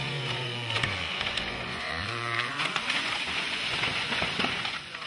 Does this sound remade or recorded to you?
remade